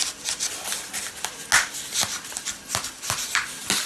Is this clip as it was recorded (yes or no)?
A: yes